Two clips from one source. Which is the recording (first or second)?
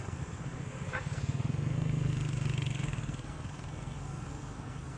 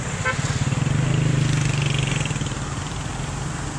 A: second